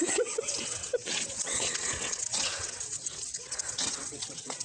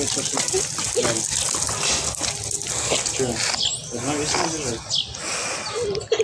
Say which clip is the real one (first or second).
second